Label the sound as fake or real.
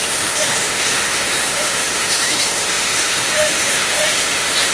fake